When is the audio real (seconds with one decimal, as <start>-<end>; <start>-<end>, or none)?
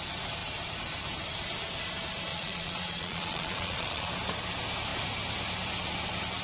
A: 0.0-2.3; 4.1-6.4